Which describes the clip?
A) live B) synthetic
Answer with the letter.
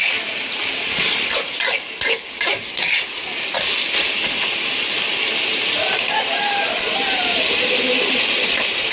A